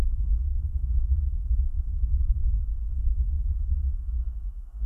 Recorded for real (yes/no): no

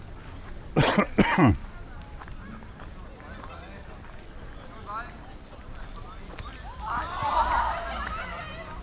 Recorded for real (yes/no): yes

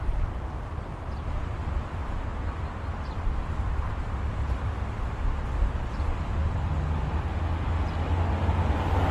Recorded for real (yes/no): yes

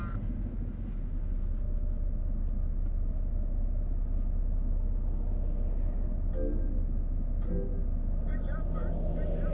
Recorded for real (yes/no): yes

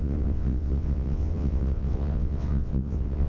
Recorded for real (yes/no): no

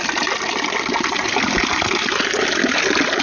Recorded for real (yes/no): yes